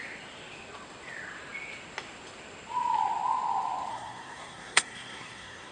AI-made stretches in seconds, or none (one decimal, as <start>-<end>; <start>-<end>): 3.9-5.7